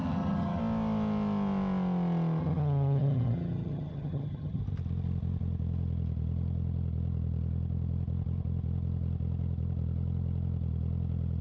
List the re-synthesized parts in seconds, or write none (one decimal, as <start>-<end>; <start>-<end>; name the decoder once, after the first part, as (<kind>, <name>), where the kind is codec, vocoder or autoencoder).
0.0-0.6 (vocoder, HiFi-GAN); 2.4-4.6